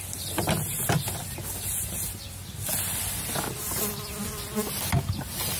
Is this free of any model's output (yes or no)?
yes